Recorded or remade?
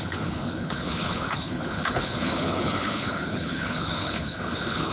remade